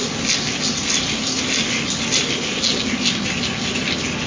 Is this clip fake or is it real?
real